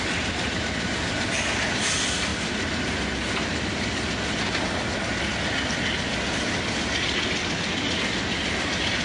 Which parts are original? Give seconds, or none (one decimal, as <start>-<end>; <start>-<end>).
0.0-9.0

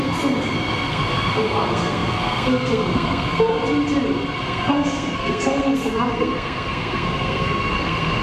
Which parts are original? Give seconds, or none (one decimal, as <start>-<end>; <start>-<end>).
3.6-4.4

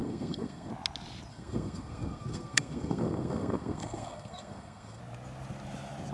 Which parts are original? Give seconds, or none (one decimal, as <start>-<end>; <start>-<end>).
0.7-1.3; 5.0-6.1

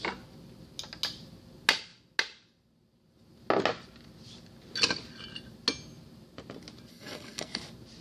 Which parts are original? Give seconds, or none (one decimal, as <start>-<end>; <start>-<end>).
0.0-6.9; 7.6-8.0

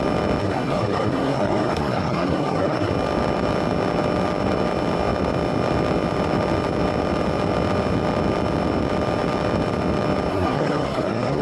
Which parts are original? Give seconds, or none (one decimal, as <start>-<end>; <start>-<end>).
0.0-0.4; 2.9-10.3

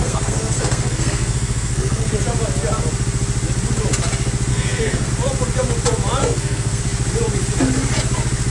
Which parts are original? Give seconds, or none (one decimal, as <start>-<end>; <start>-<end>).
2.1-4.5; 5.1-6.2; 6.8-8.5

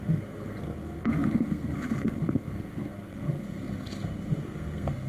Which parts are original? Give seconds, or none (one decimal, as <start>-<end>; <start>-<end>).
none